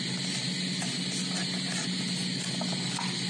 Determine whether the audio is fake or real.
real